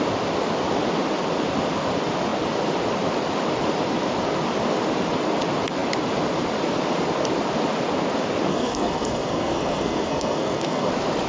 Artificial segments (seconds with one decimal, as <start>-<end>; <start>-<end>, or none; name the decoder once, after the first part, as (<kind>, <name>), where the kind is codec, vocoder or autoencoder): 8.5-10.9 (codec, SNAC)